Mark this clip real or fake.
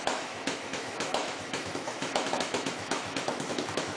fake